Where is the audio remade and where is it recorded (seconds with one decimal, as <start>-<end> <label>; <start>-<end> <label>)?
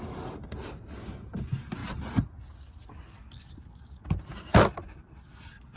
0.0-5.8 recorded